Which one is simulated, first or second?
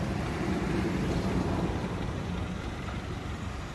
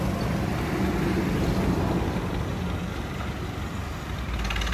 first